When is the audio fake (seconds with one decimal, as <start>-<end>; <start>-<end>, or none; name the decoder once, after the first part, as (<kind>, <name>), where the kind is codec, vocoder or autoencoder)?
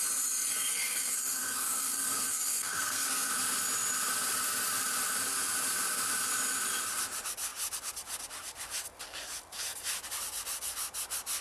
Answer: 0.7-3.3 (codec, SNAC)